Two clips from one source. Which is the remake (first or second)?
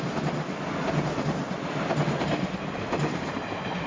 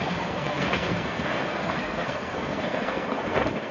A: second